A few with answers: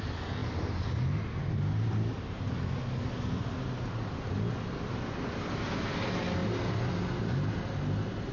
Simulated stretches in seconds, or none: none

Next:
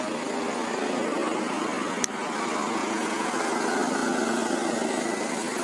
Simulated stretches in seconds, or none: 2.8-3.3 (vocoder, Vocos)

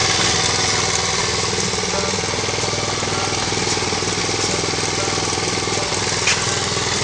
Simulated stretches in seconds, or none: none